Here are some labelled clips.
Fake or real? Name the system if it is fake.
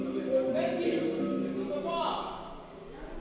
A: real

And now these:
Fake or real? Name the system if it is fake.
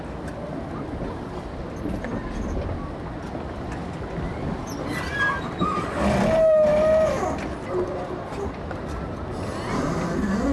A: real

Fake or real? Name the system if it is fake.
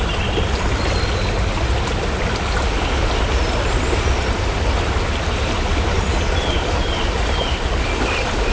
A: real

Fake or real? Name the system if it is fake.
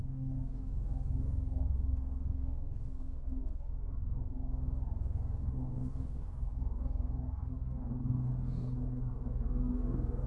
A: fake, codec, DAC